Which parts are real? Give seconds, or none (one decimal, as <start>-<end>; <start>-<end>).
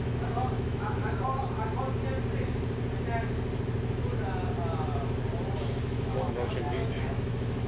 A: 1.0-5.5